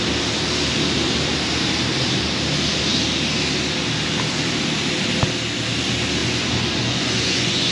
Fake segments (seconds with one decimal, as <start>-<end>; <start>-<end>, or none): 6.2-7.7